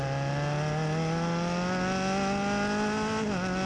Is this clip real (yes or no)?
yes